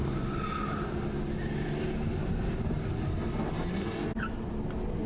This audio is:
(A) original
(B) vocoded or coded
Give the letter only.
A